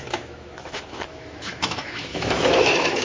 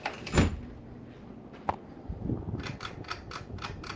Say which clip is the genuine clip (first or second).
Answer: second